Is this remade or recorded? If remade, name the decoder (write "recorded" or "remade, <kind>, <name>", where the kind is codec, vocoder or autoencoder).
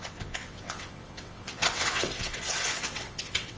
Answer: remade, vocoder, WaveNeXt